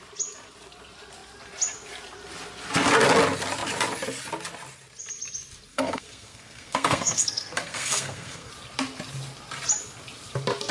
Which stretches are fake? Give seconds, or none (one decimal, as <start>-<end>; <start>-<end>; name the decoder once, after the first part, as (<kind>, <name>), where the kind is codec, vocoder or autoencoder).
5.7-8.5 (codec, SNAC)